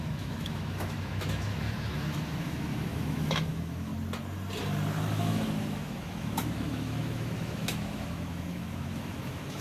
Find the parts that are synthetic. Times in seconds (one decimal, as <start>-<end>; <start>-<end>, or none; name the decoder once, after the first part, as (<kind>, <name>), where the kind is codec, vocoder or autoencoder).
0.0-3.9 (autoencoder, DAC-VAE); 5.0-9.6

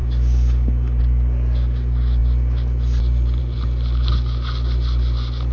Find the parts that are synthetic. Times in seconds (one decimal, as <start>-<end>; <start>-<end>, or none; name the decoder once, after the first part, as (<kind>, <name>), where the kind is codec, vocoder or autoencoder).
none

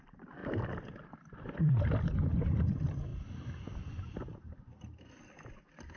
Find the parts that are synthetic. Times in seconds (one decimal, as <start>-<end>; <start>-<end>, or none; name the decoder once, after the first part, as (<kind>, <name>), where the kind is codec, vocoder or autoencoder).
0.0-6.0 (vocoder, BigVGAN v2)

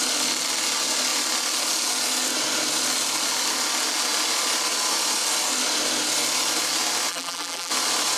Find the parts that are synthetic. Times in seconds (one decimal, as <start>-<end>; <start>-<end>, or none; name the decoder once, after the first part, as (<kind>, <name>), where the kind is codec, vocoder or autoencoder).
7.1-7.7 (vocoder, BigVGAN v2)

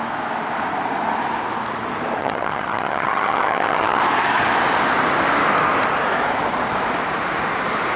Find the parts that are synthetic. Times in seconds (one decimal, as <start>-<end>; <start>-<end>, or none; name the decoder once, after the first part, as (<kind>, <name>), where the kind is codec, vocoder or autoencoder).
2.2-4.0 (vocoder, HiFi-GAN)

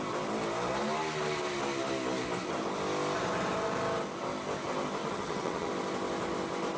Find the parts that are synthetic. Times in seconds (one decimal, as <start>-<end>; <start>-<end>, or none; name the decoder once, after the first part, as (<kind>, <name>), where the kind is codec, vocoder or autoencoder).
5.0-5.7 (vocoder, WaveNeXt)

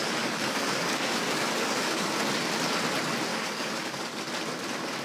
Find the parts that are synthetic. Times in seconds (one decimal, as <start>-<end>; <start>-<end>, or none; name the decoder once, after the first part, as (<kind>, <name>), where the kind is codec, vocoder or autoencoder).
0.0-2.1 (codec, DAC); 3.3-4.2

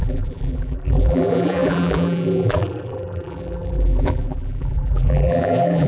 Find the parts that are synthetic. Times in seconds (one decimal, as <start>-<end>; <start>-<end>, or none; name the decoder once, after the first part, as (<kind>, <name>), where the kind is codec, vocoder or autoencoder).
0.0-5.9 (vocoder, BigVGAN v2)